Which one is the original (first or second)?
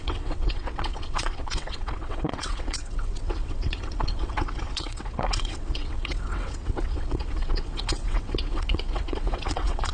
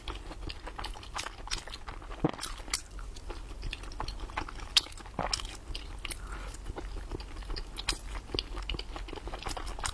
second